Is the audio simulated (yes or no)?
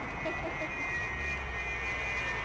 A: no